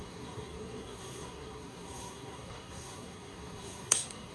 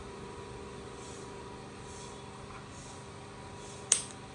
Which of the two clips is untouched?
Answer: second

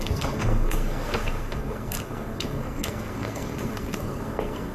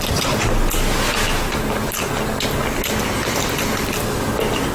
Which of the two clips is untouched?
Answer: second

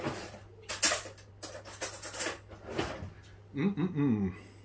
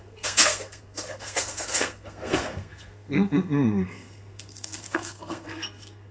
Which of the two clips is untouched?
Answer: first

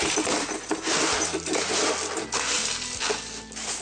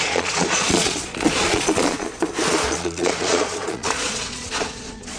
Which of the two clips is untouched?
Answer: first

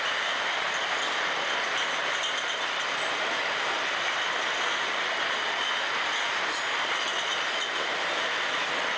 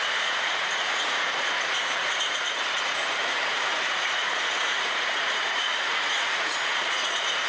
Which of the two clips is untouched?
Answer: first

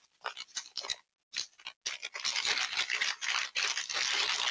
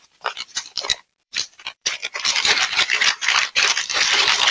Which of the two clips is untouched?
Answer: first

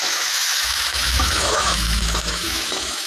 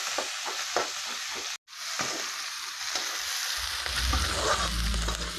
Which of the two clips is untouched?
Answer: second